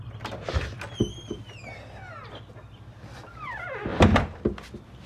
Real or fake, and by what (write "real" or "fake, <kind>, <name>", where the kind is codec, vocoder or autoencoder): real